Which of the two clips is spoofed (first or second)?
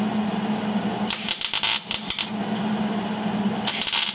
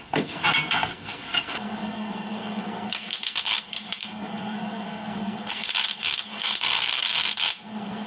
second